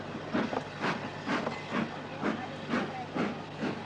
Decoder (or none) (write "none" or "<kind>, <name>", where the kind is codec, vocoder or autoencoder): none